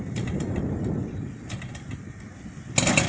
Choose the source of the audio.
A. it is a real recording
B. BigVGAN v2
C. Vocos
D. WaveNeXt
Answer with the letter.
A